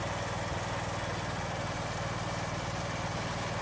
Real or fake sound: real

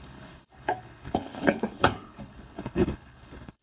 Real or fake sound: fake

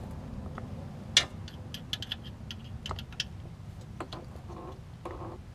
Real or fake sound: real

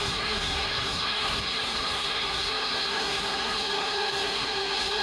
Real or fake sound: fake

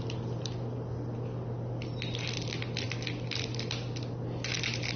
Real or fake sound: real